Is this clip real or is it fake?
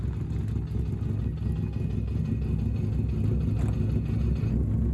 real